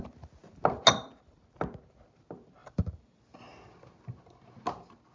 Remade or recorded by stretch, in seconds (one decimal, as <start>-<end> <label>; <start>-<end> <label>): 0.0-2.6 recorded; 2.6-3.2 remade; 3.2-5.1 recorded